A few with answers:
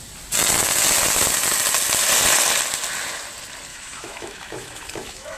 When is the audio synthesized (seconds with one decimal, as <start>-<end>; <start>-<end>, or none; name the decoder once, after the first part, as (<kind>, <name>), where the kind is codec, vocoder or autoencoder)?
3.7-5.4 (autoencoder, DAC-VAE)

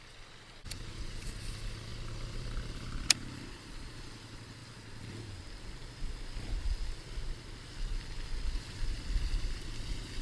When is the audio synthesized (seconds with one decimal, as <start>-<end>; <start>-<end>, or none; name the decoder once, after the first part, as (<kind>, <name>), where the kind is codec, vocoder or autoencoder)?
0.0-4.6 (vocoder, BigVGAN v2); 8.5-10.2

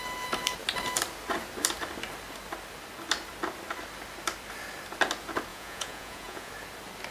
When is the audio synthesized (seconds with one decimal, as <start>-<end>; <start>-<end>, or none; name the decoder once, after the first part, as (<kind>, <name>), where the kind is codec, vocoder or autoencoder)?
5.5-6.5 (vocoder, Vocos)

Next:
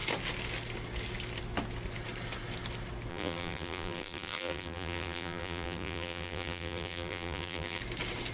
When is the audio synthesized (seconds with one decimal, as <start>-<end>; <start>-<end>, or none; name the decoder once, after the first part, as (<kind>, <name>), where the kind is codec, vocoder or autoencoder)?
3.1-7.8 (vocoder, BigVGAN v2)